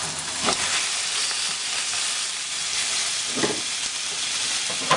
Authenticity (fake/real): real